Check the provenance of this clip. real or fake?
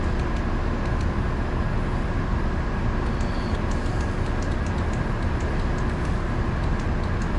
real